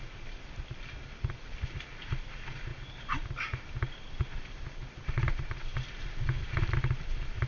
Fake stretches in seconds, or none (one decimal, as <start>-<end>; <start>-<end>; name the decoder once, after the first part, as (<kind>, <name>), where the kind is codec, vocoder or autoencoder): 0.0-2.7 (vocoder, BigVGAN v2); 4.0-5.7; 6.6-7.5